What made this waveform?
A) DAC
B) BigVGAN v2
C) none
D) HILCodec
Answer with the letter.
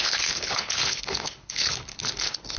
D